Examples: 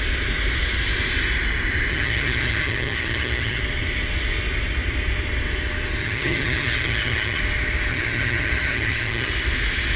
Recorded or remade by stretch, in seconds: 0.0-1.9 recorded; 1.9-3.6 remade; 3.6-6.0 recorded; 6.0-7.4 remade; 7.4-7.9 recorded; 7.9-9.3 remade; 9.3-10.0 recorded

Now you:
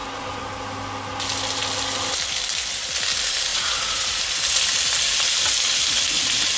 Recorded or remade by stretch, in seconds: 0.0-3.5 recorded; 3.5-4.2 remade; 4.2-6.6 recorded

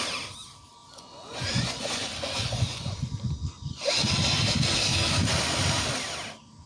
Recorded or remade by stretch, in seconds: 0.0-0.8 recorded; 0.8-4.0 remade; 4.0-6.7 recorded

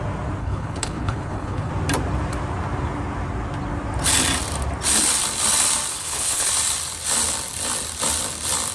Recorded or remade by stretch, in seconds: 0.0-0.4 recorded; 0.4-1.7 remade; 1.7-5.9 recorded; 5.9-6.5 remade; 6.5-8.7 recorded

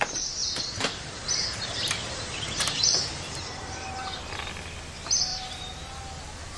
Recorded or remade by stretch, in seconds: 0.0-0.4 recorded; 0.4-4.4 remade; 4.4-5.3 recorded; 5.3-6.0 remade; 6.0-6.6 recorded